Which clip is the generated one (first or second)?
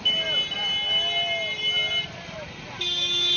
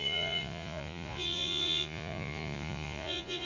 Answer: second